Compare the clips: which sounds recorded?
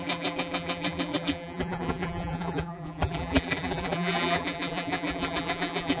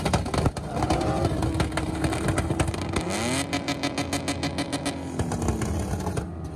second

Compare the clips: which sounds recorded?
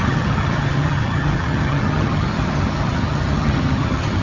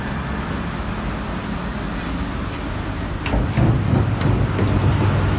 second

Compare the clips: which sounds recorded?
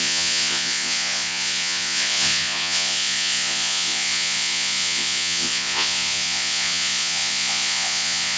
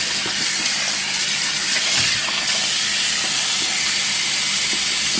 second